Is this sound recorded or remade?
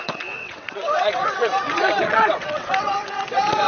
remade